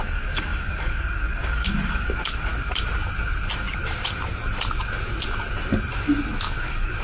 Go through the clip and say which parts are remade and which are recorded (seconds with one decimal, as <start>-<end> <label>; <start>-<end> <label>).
0.0-2.5 remade; 2.5-6.6 recorded; 6.6-7.0 remade